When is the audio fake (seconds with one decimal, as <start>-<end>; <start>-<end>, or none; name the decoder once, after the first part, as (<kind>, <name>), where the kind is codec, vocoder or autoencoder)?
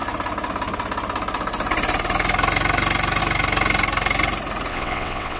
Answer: 4.7-5.4 (vocoder, WaveNeXt)